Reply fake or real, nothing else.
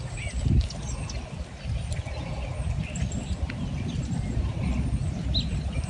real